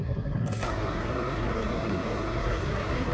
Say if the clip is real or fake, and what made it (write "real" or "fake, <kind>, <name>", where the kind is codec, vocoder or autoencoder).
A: fake, codec, SNAC